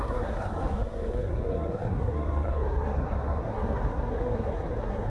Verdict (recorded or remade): remade